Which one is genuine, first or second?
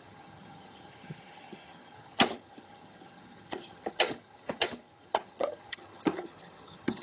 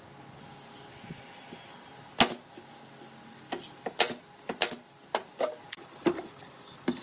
second